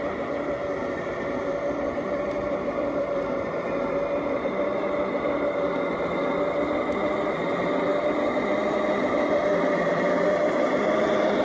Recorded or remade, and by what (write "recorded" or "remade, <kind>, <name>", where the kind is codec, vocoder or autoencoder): remade, vocoder, BigVGAN v2